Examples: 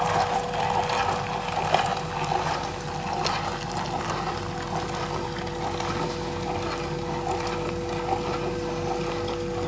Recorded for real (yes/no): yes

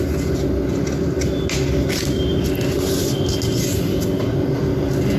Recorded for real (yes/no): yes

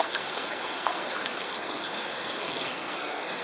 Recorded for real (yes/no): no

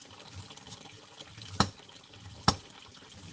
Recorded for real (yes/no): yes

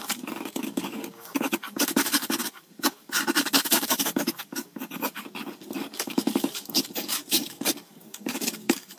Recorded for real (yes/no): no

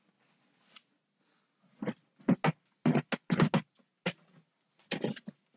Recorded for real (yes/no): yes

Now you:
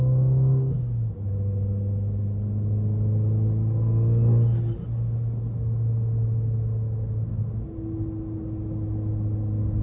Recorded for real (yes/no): yes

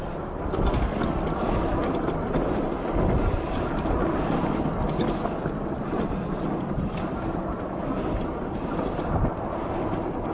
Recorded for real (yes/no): yes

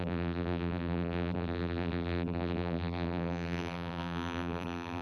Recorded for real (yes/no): no